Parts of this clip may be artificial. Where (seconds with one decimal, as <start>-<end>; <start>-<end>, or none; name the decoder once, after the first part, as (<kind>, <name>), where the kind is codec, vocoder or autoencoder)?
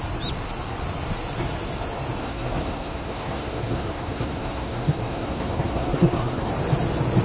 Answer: 2.2-6.5 (codec, SNAC)